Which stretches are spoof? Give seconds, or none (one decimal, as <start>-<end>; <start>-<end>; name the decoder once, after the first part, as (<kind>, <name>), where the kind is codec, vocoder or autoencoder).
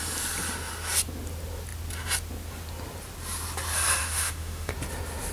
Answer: 4.0-4.7 (autoencoder, DAC-VAE)